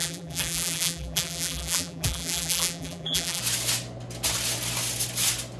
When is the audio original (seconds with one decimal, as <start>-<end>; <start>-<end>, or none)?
3.4-5.6